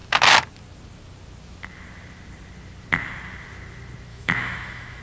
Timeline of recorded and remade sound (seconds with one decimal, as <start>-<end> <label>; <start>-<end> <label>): 0.0-4.1 recorded; 4.1-5.0 remade